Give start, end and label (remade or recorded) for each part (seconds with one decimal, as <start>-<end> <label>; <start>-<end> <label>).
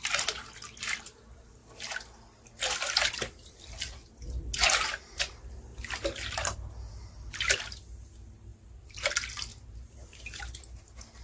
0.0-5.7 recorded; 5.7-6.7 remade; 6.7-8.5 recorded; 8.5-9.1 remade; 9.1-9.5 recorded; 9.5-10.4 remade; 10.4-11.2 recorded